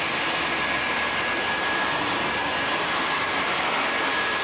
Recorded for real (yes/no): yes